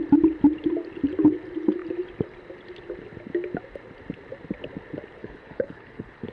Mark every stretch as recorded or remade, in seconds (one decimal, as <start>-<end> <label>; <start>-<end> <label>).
0.0-5.2 recorded; 5.2-6.3 remade